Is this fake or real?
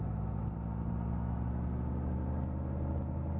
real